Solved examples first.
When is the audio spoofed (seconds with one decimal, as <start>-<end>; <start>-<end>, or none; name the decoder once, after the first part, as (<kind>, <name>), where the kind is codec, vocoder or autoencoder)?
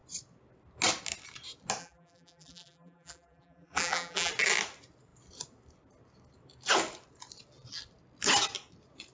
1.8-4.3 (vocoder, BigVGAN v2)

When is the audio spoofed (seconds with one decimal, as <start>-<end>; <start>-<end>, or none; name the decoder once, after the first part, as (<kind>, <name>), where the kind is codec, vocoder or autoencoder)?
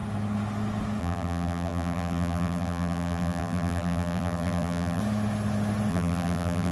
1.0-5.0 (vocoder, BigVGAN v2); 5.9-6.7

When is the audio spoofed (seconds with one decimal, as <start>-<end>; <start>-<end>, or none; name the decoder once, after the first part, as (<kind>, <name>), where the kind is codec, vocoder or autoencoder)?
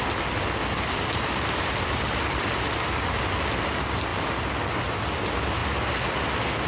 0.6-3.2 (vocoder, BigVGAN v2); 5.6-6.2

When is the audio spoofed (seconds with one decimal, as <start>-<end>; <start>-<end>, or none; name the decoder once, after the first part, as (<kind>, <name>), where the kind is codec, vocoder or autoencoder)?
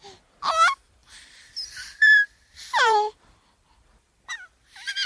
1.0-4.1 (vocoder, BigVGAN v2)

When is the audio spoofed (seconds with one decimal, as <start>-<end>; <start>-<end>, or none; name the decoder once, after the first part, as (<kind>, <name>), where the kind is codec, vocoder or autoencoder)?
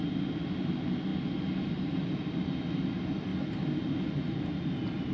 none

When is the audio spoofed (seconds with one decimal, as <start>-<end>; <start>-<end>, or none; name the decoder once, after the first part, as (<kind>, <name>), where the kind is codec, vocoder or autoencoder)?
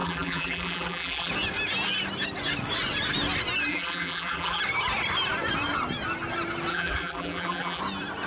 0.0-1.3 (vocoder, BigVGAN v2); 3.7-4.6; 6.7-7.8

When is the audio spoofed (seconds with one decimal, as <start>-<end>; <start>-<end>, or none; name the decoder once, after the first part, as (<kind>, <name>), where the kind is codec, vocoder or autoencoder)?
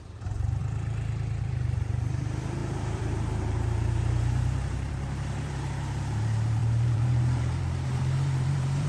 0.0-0.6 (vocoder, BigVGAN v2); 1.4-8.9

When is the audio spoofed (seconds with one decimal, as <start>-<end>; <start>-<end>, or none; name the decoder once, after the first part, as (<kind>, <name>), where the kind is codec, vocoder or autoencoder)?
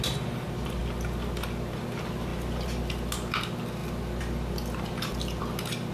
none